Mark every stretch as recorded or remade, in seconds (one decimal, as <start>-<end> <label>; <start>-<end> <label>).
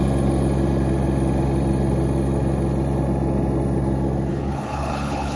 0.0-4.3 recorded; 4.3-5.4 remade